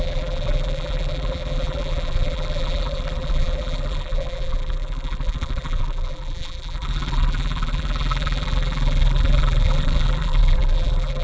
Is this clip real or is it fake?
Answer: fake